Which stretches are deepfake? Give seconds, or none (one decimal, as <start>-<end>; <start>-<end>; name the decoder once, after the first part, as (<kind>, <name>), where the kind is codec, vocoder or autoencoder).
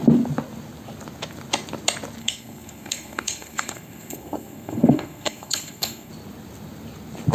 2.2-6.1 (codec, SNAC)